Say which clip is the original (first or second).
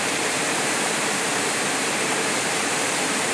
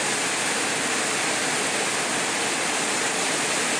second